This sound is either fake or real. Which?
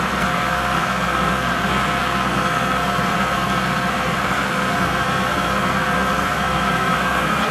fake